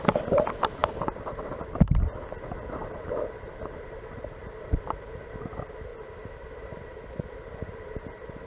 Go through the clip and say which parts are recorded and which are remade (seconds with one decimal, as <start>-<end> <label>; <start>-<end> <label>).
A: 0.0-5.9 remade; 5.9-6.6 recorded; 6.6-8.5 remade